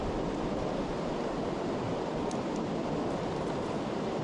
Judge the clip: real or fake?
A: real